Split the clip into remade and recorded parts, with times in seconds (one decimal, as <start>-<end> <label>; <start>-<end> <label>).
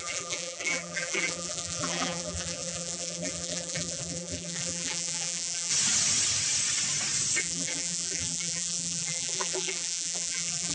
0.0-5.7 remade; 5.7-7.4 recorded; 7.4-10.7 remade